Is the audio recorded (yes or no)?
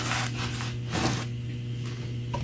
yes